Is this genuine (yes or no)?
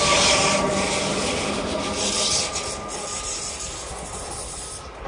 yes